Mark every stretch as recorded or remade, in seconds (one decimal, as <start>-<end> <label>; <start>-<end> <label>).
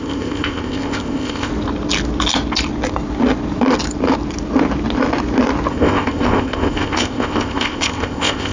0.0-1.5 remade; 1.5-5.7 recorded; 5.7-8.5 remade